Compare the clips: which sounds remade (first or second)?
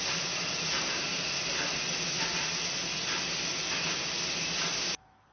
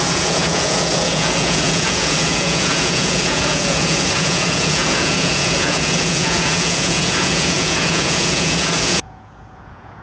second